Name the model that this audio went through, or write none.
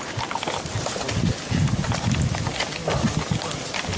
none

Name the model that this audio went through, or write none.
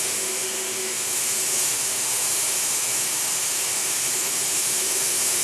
autoencoder, DAC-VAE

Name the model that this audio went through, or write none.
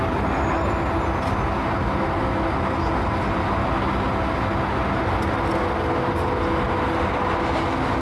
none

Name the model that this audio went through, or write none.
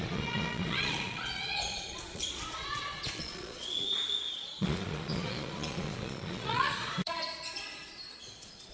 vocoder, Vocos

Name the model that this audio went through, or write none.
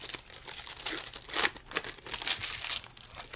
none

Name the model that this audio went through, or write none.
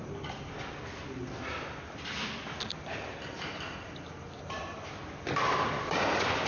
none